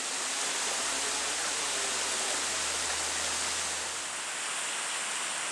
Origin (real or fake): real